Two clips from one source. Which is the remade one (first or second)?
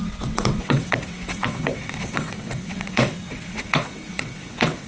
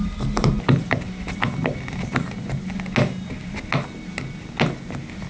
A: first